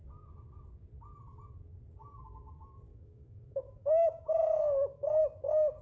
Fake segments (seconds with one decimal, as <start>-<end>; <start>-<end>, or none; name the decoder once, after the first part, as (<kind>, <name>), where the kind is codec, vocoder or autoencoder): 2.9-5.2 (autoencoder, DAC-VAE)